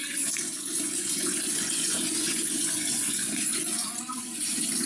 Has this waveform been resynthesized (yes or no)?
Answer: yes